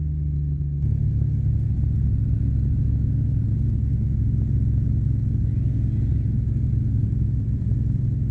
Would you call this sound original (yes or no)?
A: yes